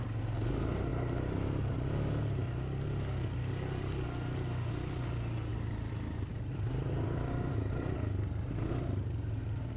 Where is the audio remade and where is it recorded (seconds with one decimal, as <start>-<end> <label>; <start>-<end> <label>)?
0.0-5.5 recorded; 5.5-8.7 remade; 8.7-9.8 recorded